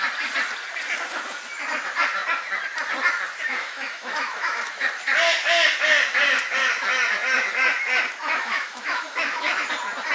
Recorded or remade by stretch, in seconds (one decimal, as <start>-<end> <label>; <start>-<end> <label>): 0.0-3.5 recorded; 3.5-4.9 remade; 4.9-8.2 recorded; 8.2-9.7 remade; 9.7-10.1 recorded